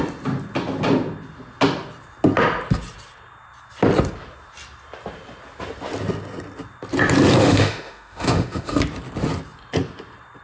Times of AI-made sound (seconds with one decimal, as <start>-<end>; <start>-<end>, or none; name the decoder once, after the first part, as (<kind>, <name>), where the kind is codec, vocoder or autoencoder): 7.4-8.8 (autoencoder, DAC-VAE)